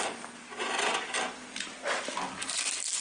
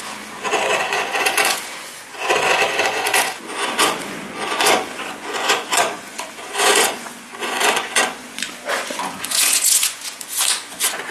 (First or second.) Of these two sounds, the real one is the first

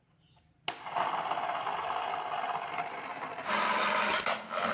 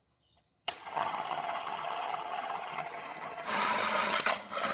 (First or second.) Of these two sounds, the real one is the first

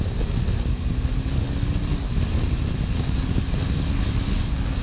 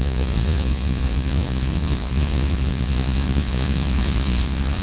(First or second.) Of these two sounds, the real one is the first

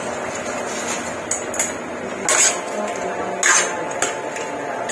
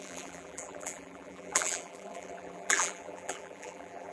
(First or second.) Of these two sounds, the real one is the first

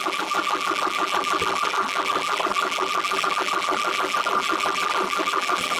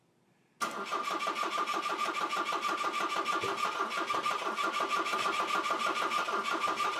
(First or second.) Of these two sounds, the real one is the second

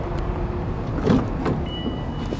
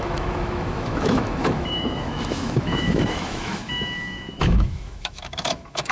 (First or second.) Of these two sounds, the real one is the first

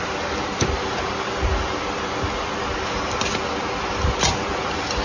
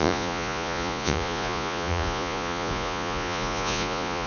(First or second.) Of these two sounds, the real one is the first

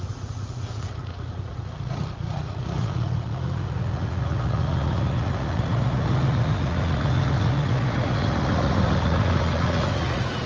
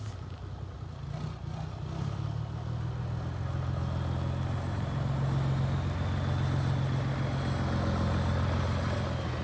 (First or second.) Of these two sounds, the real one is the second